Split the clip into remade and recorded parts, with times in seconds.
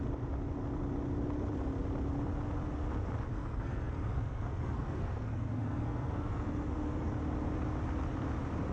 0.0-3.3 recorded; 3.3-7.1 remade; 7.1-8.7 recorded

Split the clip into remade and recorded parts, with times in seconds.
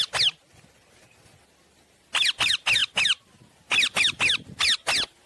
0.0-5.3 recorded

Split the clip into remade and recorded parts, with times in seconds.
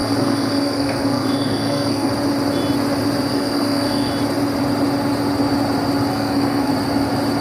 0.0-2.1 remade; 2.1-3.3 recorded; 3.3-4.1 remade; 4.1-6.1 recorded; 6.1-6.7 remade; 6.7-7.4 recorded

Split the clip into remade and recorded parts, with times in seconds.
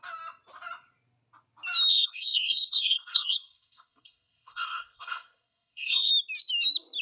0.0-1.9 recorded; 1.9-6.1 remade; 6.1-7.0 recorded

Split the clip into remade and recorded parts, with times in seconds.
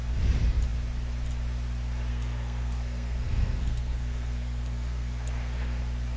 0.0-2.1 recorded; 2.1-5.8 remade; 5.8-6.2 recorded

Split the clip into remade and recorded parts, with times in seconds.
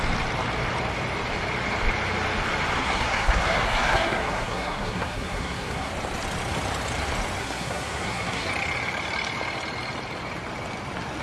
0.0-2.8 recorded; 2.8-5.9 remade; 5.9-7.4 recorded; 7.4-8.5 remade; 8.5-11.2 recorded